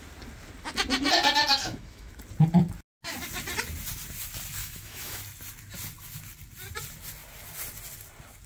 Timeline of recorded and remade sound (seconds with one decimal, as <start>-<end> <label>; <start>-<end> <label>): 0.0-1.5 recorded; 1.5-2.2 remade; 2.2-4.6 recorded; 4.6-5.2 remade; 5.2-8.5 recorded